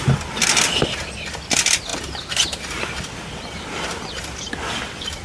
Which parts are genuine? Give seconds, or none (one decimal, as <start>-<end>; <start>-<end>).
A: 0.0-5.2